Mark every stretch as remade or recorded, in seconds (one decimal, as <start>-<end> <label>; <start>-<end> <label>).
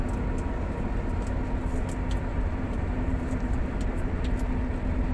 0.0-2.3 recorded; 2.3-4.1 remade; 4.1-5.1 recorded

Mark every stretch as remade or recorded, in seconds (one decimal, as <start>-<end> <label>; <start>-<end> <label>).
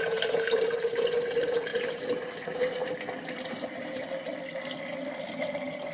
0.0-2.8 remade; 2.8-3.3 recorded; 3.3-4.3 remade; 4.3-5.4 recorded; 5.4-5.9 remade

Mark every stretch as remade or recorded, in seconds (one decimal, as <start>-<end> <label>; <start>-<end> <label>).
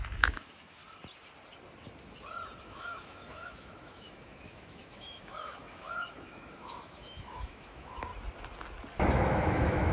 0.0-0.8 remade; 0.8-2.6 recorded; 2.6-8.1 remade; 8.1-9.1 recorded; 9.1-9.9 remade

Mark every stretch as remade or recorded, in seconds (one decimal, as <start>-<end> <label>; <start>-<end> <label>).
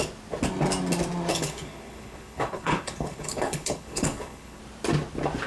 0.0-1.3 recorded; 1.3-4.6 remade; 4.6-5.5 recorded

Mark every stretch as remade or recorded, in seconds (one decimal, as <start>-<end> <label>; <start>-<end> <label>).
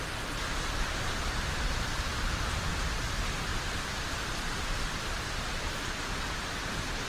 0.0-0.9 recorded; 0.9-2.1 remade; 2.1-3.5 recorded; 3.5-5.8 remade; 5.8-7.1 recorded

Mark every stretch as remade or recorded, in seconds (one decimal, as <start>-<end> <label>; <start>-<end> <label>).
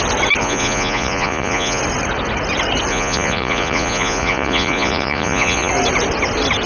0.0-0.4 recorded; 0.4-1.8 remade; 1.8-2.9 recorded; 2.9-5.7 remade; 5.7-6.7 recorded